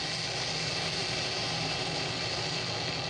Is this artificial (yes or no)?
no